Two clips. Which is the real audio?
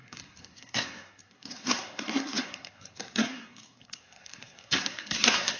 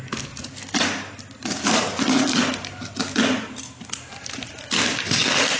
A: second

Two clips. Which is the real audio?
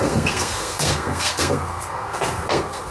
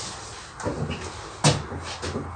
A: second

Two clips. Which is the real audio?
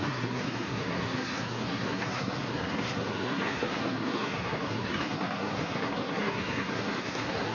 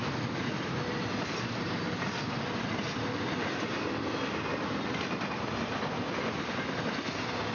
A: second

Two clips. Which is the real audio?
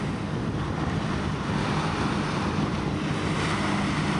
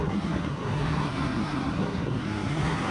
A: first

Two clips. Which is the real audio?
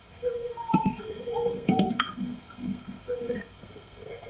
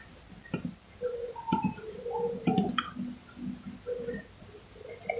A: second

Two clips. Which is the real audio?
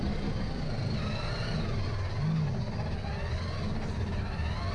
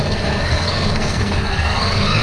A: first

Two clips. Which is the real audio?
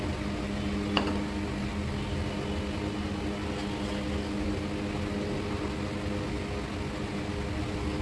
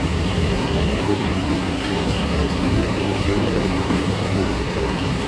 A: first